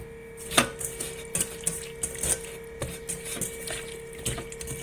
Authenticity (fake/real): real